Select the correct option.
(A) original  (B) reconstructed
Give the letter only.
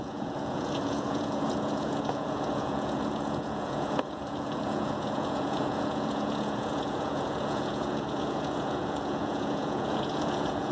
B